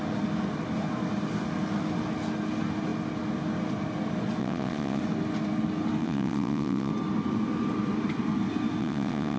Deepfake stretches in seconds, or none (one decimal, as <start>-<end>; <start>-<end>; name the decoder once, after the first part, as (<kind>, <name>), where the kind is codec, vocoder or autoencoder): 4.4-5.0 (vocoder, WaveNeXt); 6.0-6.9; 8.8-9.4